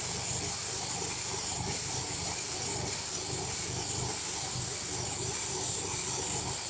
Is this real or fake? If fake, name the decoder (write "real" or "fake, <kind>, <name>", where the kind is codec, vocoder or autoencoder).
real